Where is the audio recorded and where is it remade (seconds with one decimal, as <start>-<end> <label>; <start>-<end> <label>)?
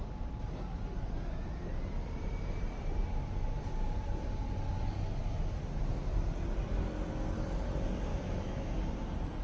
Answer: 0.0-8.1 recorded; 8.1-8.7 remade; 8.7-9.4 recorded